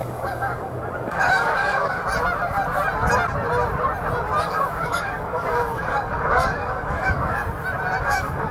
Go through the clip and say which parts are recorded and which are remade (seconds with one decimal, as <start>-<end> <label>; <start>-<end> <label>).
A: 0.0-2.0 remade; 2.0-4.4 recorded; 4.4-7.4 remade; 7.4-8.0 recorded; 8.0-8.5 remade